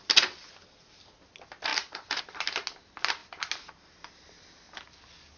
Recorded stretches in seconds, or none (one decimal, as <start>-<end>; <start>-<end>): 0.0-1.7; 2.2-5.4